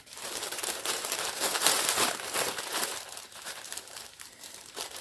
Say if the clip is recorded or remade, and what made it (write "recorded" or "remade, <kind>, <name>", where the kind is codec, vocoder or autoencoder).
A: remade, vocoder, BigVGAN v2